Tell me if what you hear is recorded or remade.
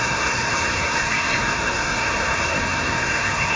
remade